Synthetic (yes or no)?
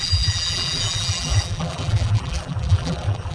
yes